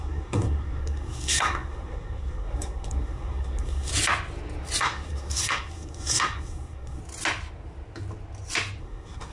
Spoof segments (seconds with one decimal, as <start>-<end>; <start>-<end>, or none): 0.0-3.9; 4.8-7.0; 8.8-9.3